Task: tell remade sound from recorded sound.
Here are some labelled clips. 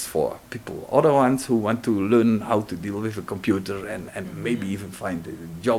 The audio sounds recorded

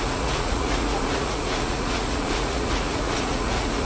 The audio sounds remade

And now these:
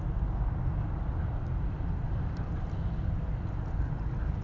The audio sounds recorded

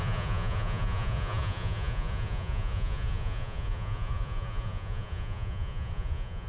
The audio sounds remade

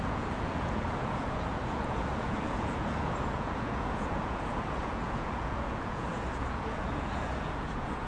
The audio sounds remade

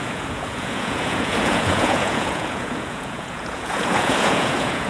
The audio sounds remade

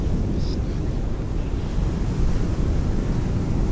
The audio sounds recorded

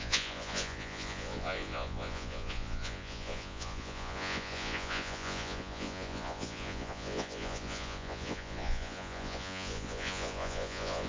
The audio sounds remade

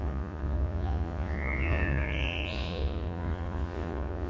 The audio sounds remade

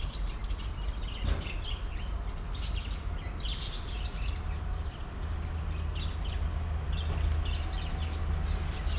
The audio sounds recorded